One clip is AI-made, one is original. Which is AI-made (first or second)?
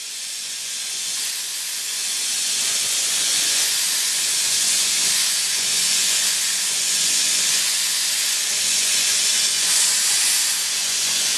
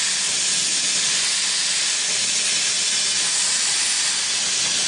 first